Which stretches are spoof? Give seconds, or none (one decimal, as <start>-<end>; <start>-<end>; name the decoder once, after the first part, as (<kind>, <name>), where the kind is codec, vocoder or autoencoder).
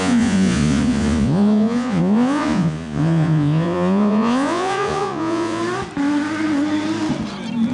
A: 0.0-5.6 (vocoder, Vocos)